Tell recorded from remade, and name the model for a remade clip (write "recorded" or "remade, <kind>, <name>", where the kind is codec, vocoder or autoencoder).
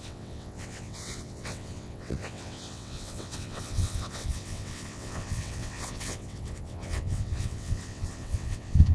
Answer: remade, vocoder, WaveNeXt